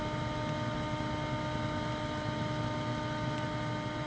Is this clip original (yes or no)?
yes